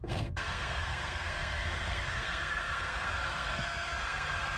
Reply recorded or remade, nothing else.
remade